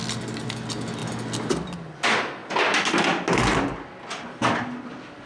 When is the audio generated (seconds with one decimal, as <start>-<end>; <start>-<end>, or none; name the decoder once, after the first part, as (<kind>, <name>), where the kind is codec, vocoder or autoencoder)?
none